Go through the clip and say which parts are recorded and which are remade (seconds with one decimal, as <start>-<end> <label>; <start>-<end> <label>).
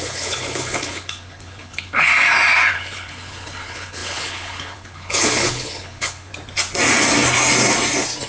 0.0-2.1 remade; 2.1-2.7 recorded; 2.7-6.3 remade; 6.3-8.3 recorded